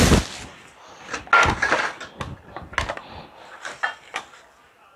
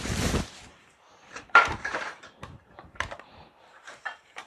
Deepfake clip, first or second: second